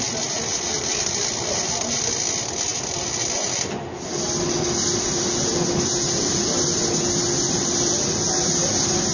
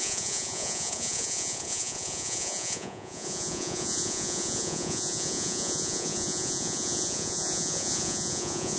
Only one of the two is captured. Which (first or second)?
first